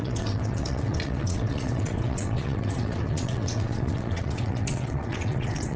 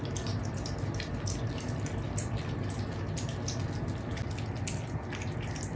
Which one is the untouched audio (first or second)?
second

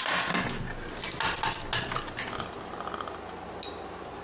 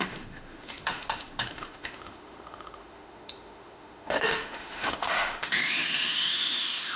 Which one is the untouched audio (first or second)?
first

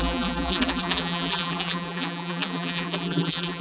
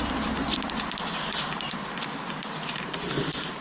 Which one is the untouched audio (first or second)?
second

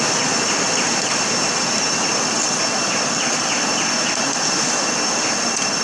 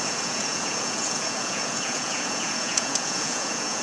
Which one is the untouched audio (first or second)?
first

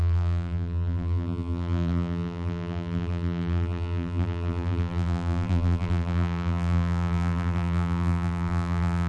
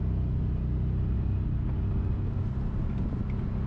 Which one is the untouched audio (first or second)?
second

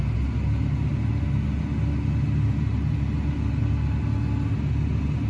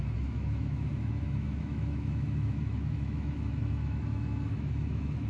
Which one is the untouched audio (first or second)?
first